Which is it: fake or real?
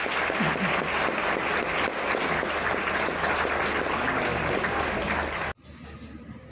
real